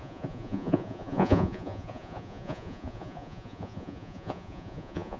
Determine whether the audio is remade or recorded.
remade